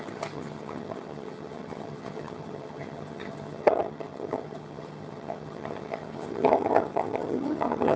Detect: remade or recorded remade